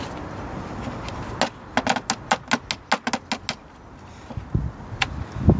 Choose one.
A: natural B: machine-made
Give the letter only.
A